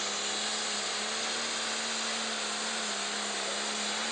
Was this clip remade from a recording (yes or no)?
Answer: no